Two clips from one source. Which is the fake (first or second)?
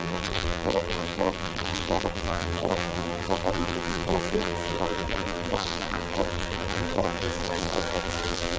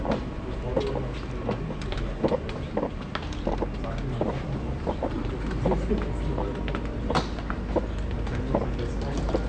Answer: first